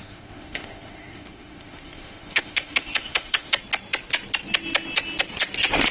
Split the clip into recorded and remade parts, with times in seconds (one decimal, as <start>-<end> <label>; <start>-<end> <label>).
0.0-3.5 remade; 3.5-5.9 recorded